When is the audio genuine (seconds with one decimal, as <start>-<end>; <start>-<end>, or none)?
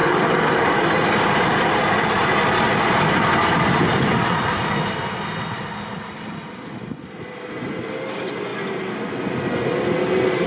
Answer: 0.8-10.5